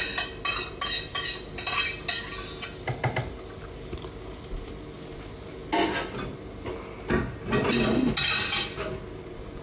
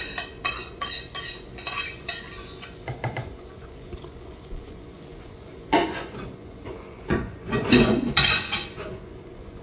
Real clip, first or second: first